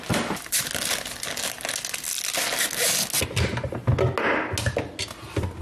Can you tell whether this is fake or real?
real